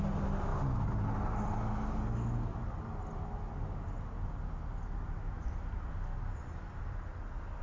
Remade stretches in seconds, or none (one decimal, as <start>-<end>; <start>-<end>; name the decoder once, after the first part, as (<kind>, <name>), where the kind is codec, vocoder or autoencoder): none